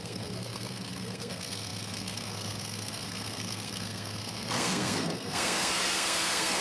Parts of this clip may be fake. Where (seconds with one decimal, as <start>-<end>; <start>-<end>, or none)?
0.0-6.6